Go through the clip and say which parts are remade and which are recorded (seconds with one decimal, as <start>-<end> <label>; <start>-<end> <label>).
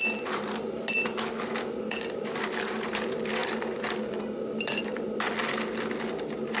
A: 0.0-6.6 recorded